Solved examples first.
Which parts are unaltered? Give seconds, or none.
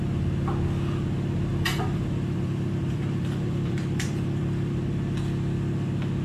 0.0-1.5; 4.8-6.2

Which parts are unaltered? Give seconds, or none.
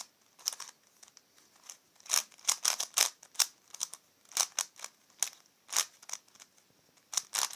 0.0-7.6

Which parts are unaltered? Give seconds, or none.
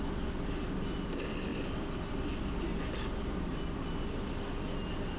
0.0-5.2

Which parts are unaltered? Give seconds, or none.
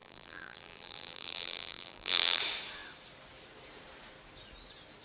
2.4-5.0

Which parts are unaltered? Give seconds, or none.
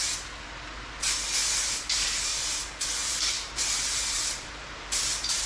0.0-1.6; 2.3-3.1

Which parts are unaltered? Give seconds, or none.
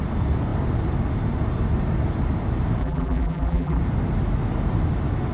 0.0-2.8; 3.8-5.3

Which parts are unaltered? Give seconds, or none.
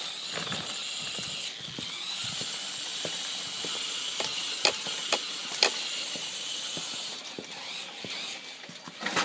0.0-5.9; 7.7-9.2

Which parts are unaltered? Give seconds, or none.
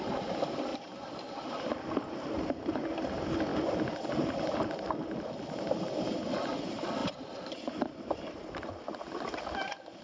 0.0-0.7; 1.5-7.0; 8.7-10.0